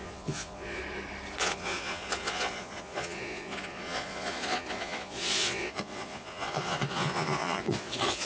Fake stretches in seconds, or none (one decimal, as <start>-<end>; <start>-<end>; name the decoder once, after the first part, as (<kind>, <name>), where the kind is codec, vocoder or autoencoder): 0.0-0.8 (vocoder, Vocos); 1.4-8.3